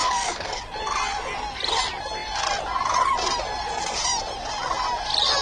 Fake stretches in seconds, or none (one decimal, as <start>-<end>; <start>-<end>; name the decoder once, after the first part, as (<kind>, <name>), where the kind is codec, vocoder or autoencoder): 0.0-0.6 (codec, SNAC)